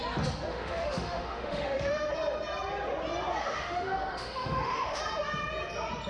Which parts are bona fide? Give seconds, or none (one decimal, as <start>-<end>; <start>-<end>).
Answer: 0.0-0.5; 2.1-3.4; 5.0-6.1